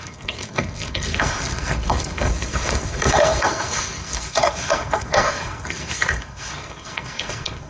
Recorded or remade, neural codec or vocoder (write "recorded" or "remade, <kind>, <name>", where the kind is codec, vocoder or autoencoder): remade, codec, SNAC